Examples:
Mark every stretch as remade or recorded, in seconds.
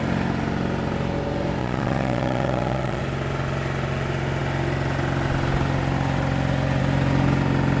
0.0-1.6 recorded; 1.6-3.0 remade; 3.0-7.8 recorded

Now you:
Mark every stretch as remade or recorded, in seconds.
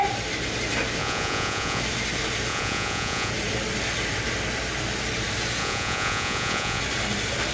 0.0-1.0 recorded; 1.0-1.8 remade; 1.8-2.5 recorded; 2.5-3.3 remade; 3.3-5.6 recorded; 5.6-6.8 remade; 6.8-7.5 recorded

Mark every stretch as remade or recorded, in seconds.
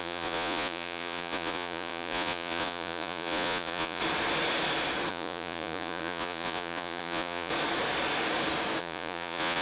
0.0-4.0 remade; 4.0-5.1 recorded; 5.1-7.5 remade; 7.5-8.8 recorded; 8.8-9.6 remade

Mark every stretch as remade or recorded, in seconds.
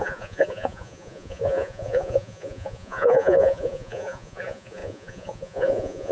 0.0-6.1 remade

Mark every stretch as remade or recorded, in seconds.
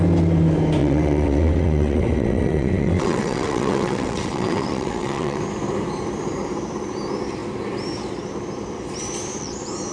0.0-0.8 recorded; 0.8-5.4 remade; 5.4-9.9 recorded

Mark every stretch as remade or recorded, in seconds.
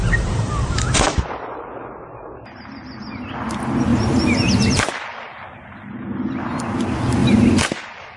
0.0-1.3 remade; 1.3-3.9 recorded; 3.9-5.9 remade; 5.9-7.2 recorded; 7.2-8.2 remade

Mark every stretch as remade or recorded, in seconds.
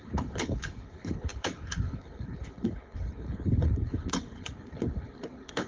0.0-5.7 remade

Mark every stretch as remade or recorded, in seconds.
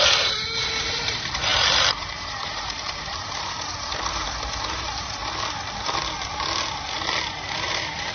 0.0-5.2 remade; 5.2-8.1 recorded